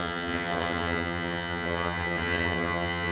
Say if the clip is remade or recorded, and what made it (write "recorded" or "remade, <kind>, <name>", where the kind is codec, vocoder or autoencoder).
remade, vocoder, HiFi-GAN